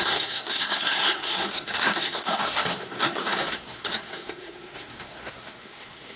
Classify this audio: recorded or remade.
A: remade